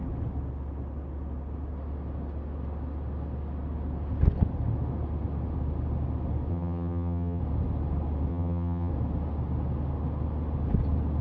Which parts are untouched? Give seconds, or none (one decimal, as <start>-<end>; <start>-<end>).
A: 0.0-6.5; 7.4-8.3; 8.9-11.2